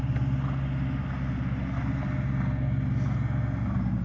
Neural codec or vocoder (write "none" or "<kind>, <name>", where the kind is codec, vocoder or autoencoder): none